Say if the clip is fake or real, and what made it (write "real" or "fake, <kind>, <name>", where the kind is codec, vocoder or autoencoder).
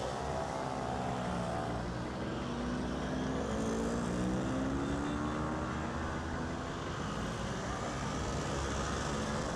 real